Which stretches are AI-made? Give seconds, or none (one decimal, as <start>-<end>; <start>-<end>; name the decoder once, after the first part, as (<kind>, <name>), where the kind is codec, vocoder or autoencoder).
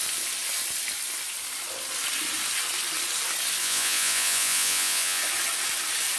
3.6-5.2 (vocoder, Vocos)